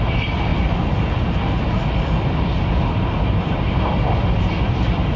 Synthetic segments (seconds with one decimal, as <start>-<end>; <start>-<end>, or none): none